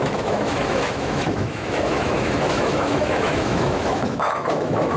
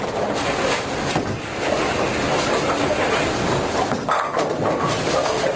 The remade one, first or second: first